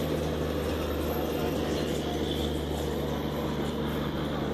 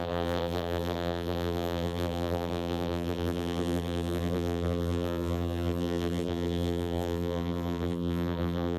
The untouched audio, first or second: first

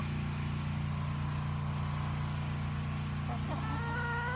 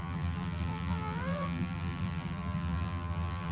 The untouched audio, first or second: first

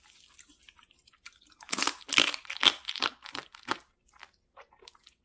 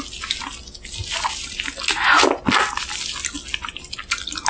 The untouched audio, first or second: second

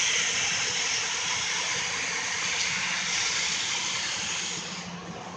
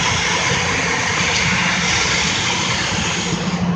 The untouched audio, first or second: second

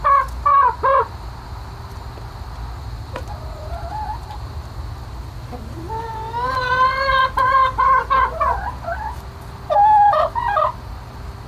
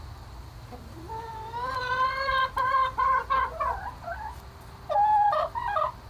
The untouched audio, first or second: first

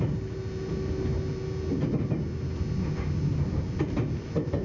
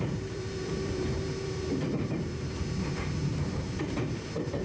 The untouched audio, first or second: first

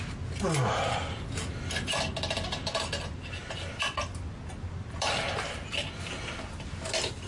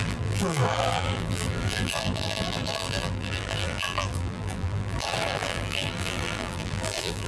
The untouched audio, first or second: first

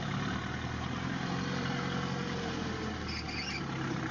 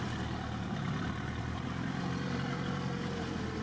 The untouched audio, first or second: first